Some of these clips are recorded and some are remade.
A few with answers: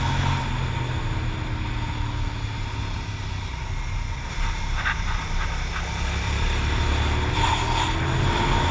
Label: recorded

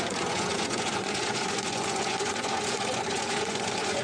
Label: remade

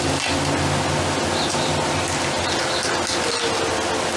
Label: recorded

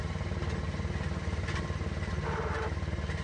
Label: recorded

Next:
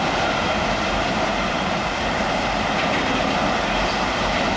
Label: recorded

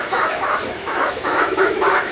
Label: remade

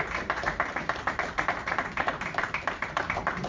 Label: remade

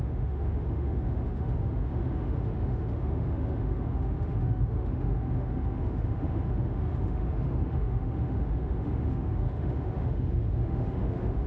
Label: remade